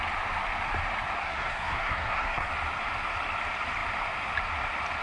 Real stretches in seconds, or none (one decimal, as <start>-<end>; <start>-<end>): 0.0-1.2; 2.5-5.0